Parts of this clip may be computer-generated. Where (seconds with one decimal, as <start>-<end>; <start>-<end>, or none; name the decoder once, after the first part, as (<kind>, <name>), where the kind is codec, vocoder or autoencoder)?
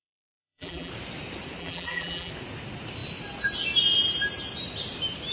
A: 0.0-0.9 (vocoder, BigVGAN v2); 1.6-2.3